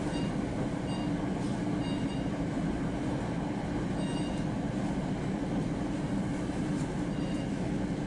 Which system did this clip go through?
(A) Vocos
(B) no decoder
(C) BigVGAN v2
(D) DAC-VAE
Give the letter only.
B